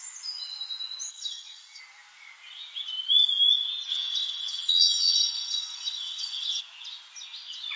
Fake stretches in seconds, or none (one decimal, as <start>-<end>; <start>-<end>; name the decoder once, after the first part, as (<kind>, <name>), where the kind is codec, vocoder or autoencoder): 1.1-1.8 (vocoder, WaveNeXt); 3.9-6.6